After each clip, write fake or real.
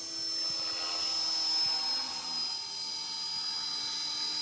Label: real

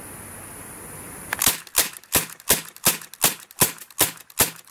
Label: real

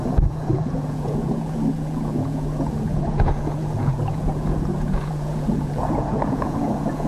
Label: fake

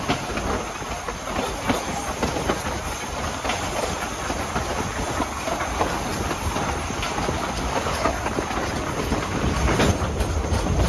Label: real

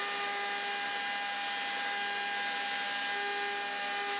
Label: real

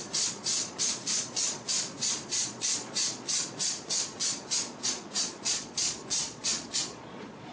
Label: fake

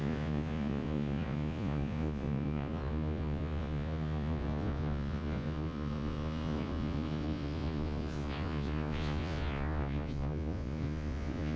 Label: fake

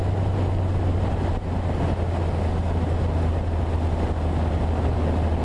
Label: real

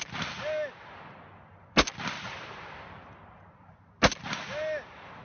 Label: real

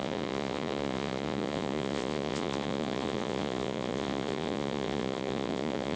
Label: fake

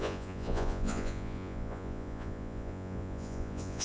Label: fake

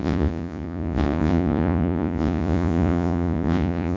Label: fake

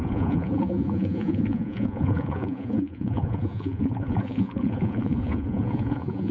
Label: fake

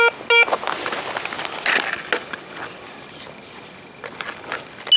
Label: real